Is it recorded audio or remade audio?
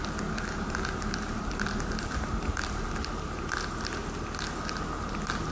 recorded